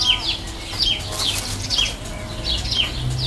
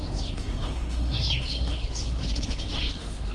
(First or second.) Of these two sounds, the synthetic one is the second